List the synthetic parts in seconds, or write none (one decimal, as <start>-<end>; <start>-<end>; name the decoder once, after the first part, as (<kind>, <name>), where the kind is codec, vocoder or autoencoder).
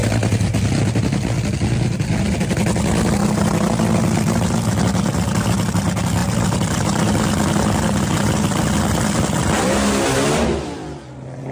none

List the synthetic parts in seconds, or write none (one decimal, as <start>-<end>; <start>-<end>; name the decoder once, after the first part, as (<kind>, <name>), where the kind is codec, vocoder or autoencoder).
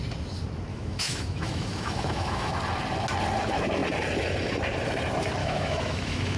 0.7-2.5 (autoencoder, DAC-VAE); 5.4-6.4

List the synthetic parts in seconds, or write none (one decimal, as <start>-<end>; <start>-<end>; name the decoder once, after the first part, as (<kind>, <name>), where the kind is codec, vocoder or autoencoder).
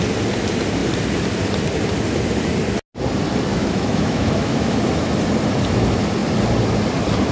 3.5-4.8 (autoencoder, DAC-VAE)